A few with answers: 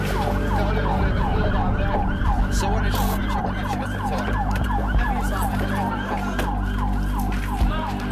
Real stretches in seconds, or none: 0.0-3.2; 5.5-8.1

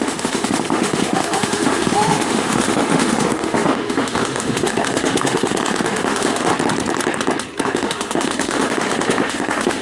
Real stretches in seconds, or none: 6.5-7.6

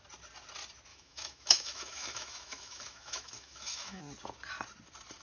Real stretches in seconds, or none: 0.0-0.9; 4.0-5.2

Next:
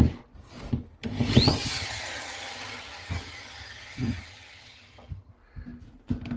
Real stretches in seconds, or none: 0.0-1.5; 5.3-6.4

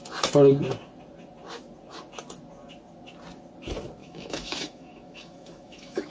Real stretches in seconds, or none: 0.0-4.0